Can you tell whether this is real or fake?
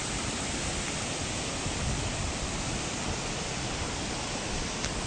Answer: real